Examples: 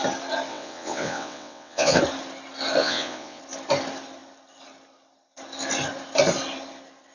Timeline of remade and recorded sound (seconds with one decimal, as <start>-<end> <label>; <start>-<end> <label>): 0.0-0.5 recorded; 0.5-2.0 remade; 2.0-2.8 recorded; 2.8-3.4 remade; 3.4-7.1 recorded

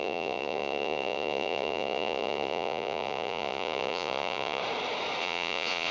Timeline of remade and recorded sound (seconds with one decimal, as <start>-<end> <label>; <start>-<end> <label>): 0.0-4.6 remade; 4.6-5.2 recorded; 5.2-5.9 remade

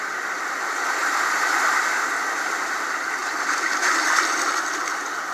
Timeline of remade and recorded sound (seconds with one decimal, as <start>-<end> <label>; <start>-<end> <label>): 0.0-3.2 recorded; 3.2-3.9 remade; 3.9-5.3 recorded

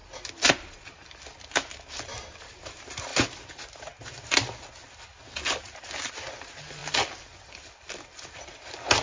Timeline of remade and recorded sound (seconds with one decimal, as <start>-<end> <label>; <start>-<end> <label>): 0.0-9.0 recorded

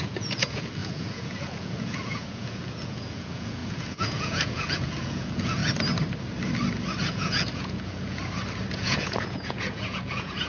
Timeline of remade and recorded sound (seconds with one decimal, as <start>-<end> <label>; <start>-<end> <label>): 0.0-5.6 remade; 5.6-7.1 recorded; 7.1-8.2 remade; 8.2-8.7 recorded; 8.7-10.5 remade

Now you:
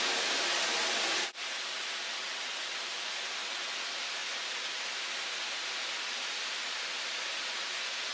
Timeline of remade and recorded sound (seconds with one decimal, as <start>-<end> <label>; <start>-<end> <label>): 0.0-8.1 recorded